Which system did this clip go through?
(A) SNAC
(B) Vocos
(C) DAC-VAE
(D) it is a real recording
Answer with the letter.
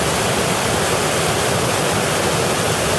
D